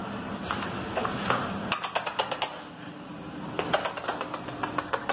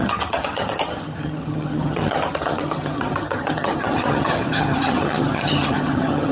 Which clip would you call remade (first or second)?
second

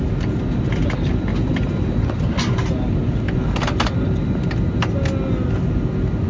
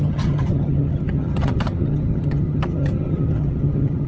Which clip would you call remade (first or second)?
second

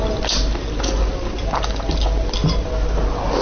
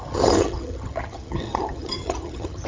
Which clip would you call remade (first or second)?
second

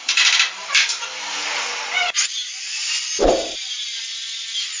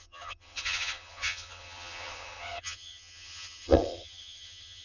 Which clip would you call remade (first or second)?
second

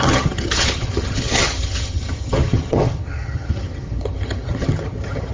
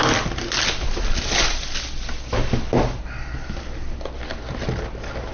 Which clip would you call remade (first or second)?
first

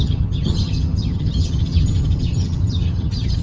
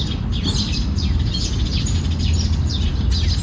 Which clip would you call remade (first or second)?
first